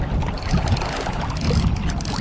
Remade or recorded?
recorded